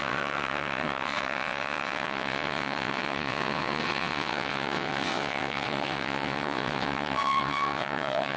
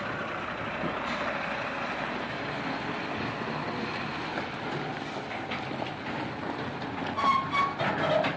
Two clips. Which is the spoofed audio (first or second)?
first